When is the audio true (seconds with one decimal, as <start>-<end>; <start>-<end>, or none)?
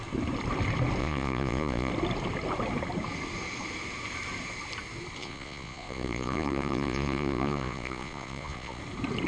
0.0-1.0; 1.9-5.2; 8.8-9.3